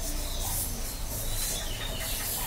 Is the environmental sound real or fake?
real